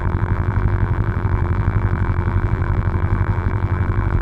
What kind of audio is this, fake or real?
fake